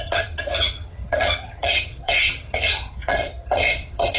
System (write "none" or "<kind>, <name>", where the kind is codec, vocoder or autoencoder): vocoder, HiFi-GAN